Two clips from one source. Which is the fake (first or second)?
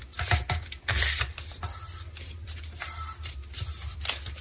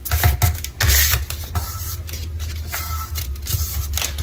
first